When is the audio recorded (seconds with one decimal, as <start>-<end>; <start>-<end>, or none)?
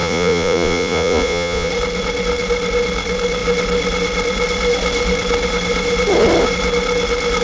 1.7-7.4